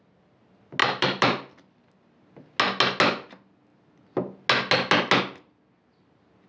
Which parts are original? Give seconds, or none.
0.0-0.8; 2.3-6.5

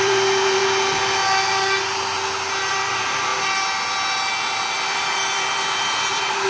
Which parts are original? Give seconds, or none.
0.6-2.7; 3.3-4.9

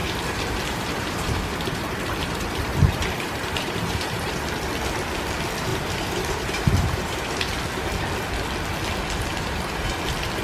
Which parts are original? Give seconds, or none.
4.4-5.7; 7.6-9.3; 9.9-10.4